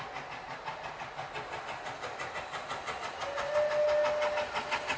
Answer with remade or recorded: recorded